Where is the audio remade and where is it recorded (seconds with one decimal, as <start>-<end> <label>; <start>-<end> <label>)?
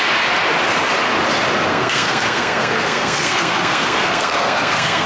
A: 0.0-1.7 recorded; 1.7-5.1 remade